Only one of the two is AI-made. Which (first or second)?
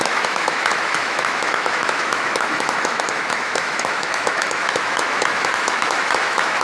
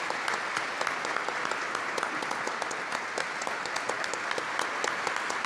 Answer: first